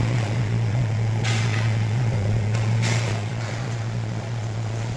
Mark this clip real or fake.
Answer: fake